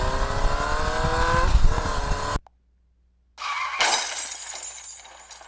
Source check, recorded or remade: recorded